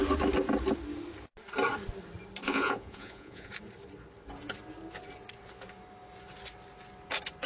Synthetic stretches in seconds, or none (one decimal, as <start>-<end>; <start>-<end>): 2.4-3.5